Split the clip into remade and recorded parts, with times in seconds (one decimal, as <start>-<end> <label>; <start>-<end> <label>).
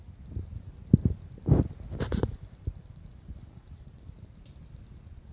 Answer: 0.0-1.0 recorded; 1.0-4.2 remade; 4.2-5.3 recorded